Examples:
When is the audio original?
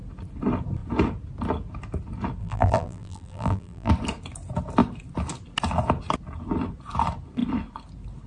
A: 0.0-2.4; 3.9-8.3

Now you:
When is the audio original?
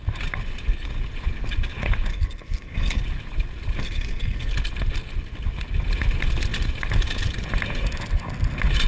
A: 0.0-2.1; 3.0-3.8; 4.5-8.9